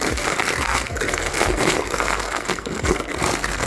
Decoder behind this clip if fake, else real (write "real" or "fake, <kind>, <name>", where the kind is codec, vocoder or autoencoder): fake, codec, SNAC